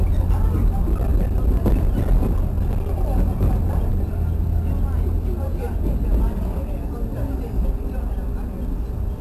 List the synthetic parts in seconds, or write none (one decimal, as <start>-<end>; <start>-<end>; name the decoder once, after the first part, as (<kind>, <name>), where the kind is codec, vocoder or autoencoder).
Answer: none